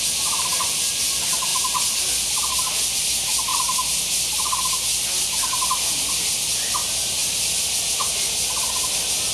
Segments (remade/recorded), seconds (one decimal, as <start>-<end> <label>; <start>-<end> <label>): 0.0-9.3 recorded